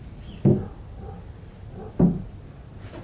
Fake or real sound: real